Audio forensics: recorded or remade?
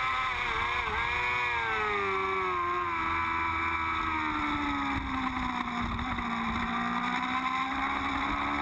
recorded